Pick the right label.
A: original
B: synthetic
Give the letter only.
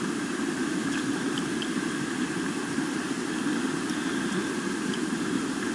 A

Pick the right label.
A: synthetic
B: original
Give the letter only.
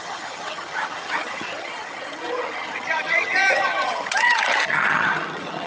A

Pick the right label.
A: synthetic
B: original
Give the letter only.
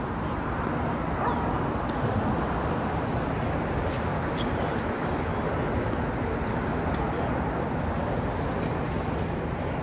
B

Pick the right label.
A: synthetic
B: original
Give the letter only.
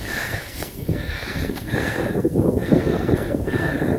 A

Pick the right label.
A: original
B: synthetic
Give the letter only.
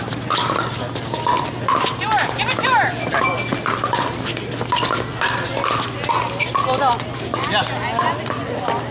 A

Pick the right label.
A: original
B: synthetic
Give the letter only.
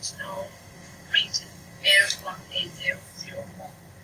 B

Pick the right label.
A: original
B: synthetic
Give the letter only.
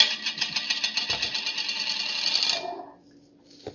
A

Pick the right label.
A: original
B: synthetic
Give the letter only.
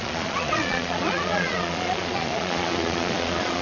B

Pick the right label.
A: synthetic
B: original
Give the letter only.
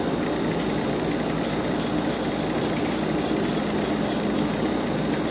B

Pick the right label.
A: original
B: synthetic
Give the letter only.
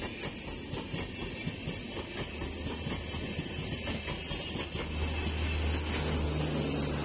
A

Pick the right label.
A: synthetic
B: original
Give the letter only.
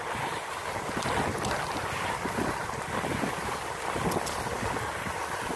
B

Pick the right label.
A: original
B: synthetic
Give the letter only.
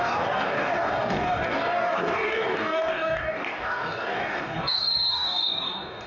B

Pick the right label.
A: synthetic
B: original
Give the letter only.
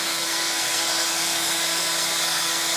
A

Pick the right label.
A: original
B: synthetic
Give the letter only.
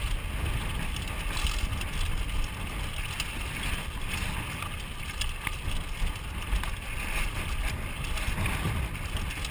A